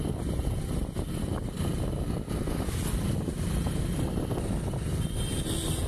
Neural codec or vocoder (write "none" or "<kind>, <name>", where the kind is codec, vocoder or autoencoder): none